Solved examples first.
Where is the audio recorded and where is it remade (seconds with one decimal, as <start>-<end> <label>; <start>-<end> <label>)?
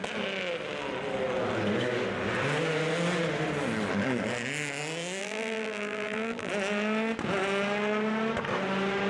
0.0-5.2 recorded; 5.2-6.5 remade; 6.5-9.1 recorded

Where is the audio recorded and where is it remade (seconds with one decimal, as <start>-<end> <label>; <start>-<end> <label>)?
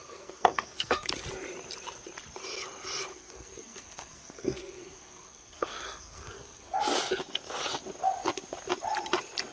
0.0-1.1 remade; 1.1-3.1 recorded; 3.1-6.8 remade; 6.8-9.5 recorded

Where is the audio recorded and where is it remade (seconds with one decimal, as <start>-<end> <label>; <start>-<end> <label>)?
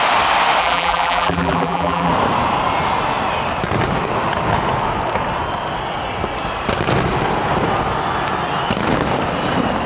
0.0-0.6 recorded; 0.6-2.1 remade; 2.1-9.9 recorded